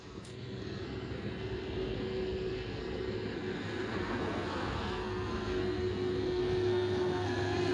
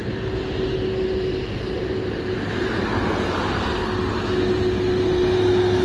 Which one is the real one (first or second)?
second